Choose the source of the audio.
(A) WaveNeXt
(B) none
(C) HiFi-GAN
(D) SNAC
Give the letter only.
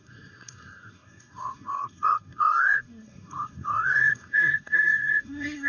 D